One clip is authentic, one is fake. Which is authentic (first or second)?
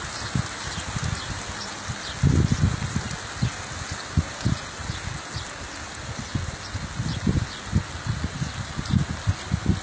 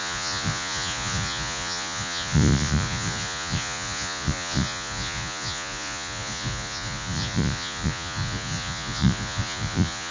first